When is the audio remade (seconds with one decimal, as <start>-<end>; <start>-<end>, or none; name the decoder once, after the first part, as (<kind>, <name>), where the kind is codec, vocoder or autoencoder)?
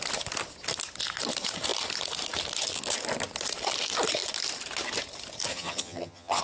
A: 5.5-6.4 (vocoder, HiFi-GAN)